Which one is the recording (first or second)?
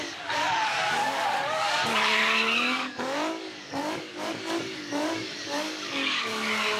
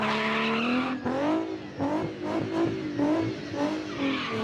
second